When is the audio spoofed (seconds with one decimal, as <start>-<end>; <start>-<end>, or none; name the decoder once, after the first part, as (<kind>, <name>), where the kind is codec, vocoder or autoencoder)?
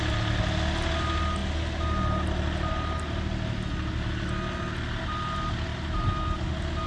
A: none